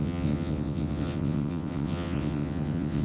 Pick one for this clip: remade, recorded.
remade